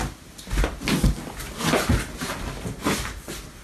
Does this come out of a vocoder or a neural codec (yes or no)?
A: no